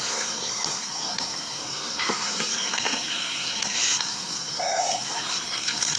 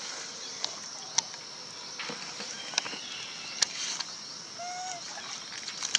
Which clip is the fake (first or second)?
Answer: first